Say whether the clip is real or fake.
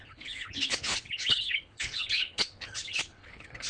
fake